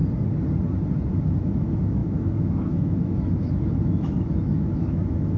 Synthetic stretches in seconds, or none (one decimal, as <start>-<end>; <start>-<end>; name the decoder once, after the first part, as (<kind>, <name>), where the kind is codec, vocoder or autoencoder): 1.1-5.4 (autoencoder, DAC-VAE)